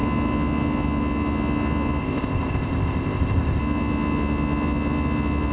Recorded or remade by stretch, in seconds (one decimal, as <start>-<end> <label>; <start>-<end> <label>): 0.0-2.0 recorded; 2.0-3.6 remade; 3.6-5.5 recorded